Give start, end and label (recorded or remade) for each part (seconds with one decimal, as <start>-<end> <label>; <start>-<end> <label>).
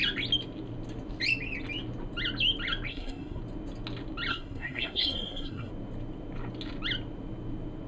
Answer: 0.0-2.9 recorded; 2.9-3.4 remade; 3.4-4.3 recorded; 4.3-5.7 remade; 5.7-7.9 recorded